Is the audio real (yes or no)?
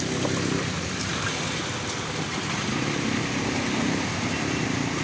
yes